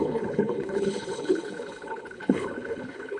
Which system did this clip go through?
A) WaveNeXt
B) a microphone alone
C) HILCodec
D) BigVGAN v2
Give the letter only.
C